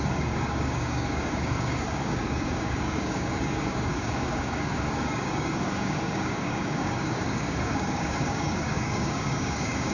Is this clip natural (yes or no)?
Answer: no